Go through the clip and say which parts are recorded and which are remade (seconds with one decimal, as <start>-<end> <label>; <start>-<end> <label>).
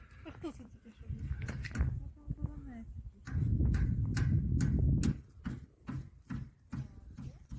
0.0-7.6 recorded